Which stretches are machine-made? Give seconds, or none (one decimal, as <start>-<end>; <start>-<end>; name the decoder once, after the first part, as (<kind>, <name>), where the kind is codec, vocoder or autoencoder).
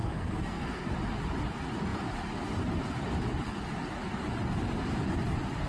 0.0-0.9 (codec, SNAC)